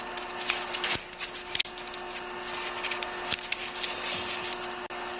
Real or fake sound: real